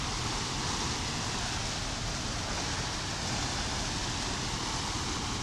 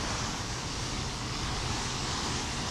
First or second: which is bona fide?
first